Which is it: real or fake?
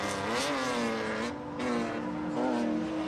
real